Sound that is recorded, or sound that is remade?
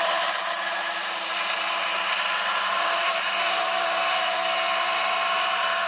remade